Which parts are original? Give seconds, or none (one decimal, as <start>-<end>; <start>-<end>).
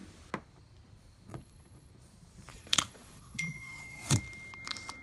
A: 0.0-1.3; 1.9-2.5; 4.2-5.0